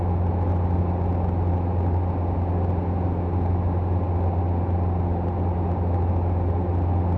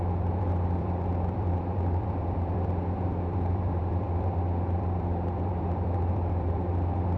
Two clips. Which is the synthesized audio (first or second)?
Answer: second